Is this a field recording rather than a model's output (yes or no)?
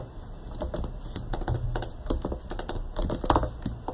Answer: yes